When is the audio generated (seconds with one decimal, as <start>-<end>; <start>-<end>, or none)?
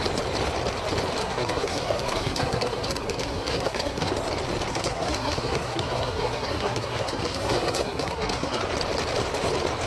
1.2-4.1; 4.7-8.6